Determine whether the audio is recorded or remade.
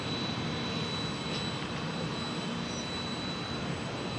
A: recorded